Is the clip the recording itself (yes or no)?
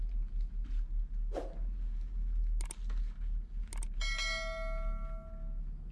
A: yes